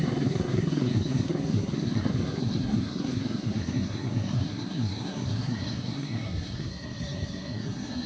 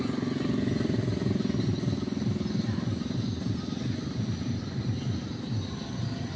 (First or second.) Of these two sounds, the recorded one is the second